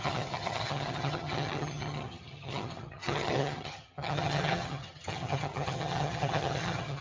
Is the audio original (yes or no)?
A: no